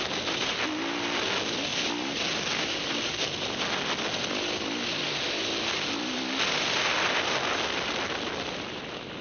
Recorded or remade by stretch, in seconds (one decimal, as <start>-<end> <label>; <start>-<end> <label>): 0.0-9.2 recorded